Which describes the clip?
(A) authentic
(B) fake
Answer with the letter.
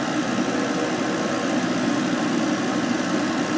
A